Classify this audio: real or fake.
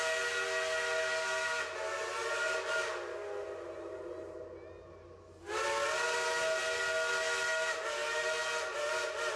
real